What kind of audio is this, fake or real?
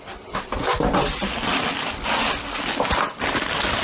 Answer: real